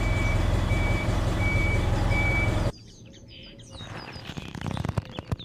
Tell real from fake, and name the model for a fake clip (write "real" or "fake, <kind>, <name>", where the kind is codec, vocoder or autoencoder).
fake, vocoder, BigVGAN v2